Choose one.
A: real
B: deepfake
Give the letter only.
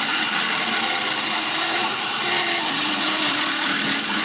A